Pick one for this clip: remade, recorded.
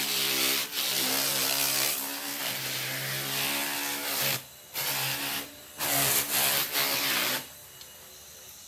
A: recorded